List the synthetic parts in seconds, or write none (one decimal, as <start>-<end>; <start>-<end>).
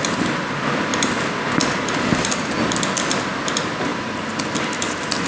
none